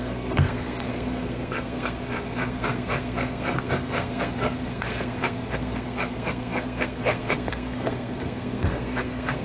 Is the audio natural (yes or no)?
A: no